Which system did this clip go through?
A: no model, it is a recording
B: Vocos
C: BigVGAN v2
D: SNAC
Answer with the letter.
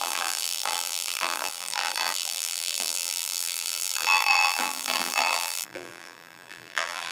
C